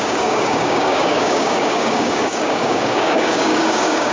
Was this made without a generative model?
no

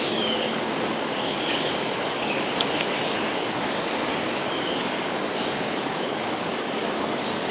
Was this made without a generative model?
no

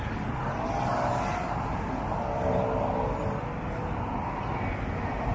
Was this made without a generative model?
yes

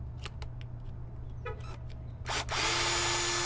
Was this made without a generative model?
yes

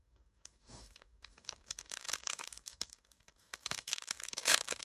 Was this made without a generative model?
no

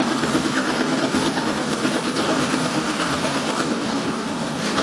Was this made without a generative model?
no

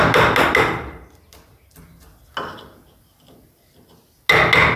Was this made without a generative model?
yes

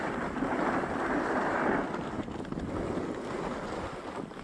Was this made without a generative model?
yes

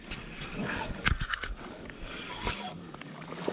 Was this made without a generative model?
no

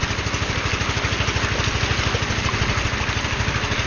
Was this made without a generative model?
yes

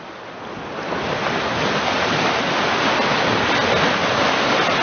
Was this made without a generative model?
yes